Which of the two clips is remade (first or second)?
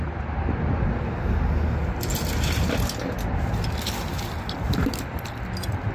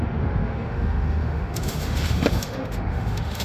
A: second